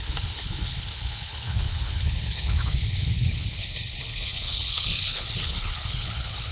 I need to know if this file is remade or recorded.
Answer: remade